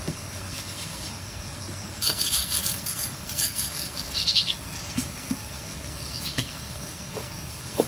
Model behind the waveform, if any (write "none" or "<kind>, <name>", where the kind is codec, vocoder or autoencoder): codec, SNAC